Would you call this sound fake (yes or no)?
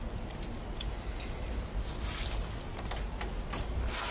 no